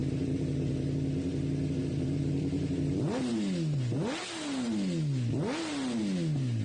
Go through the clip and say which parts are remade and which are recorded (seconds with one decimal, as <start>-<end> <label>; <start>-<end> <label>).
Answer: 0.0-0.7 remade; 0.7-1.8 recorded; 1.8-3.0 remade; 3.0-6.6 recorded